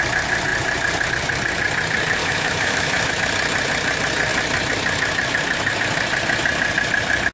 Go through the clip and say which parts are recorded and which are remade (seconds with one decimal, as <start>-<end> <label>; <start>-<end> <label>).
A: 0.0-2.2 recorded; 2.2-3.1 remade; 3.1-7.3 recorded